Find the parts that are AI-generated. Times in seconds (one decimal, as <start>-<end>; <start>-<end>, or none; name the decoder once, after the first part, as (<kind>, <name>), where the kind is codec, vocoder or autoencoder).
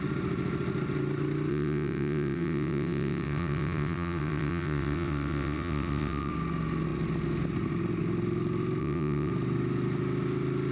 1.5-6.3 (vocoder, WaveNeXt); 8.8-9.3